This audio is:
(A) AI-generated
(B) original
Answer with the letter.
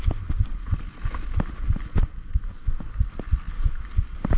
B